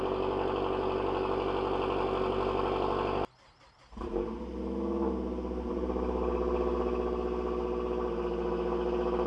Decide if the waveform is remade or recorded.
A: recorded